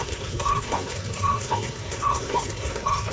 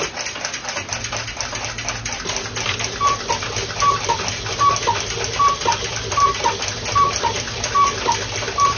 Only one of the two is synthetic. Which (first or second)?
first